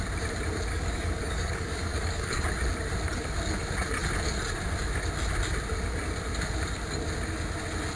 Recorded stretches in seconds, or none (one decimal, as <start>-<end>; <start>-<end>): 0.0-0.7; 2.4-8.0